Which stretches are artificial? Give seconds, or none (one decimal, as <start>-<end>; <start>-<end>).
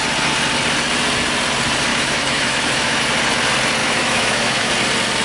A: 1.9-3.0; 3.8-4.7